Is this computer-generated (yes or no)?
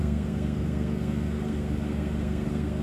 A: yes